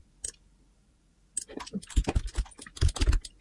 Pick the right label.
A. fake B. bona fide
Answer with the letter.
B